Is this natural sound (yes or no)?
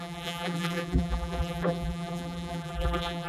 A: no